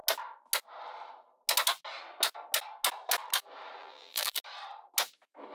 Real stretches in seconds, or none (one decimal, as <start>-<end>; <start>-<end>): 0.0-3.8; 4.4-5.5